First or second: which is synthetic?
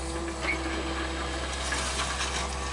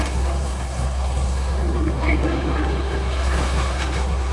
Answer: second